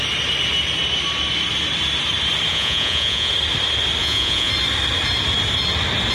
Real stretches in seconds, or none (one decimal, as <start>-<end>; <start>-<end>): 0.0-2.5; 3.3-4.0; 4.5-6.1